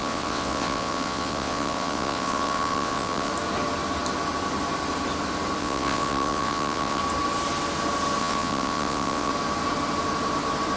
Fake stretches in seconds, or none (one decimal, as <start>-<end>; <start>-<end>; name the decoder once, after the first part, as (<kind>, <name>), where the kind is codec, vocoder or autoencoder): 0.0-3.3 (vocoder, WaveNeXt); 5.6-7.0; 8.2-9.3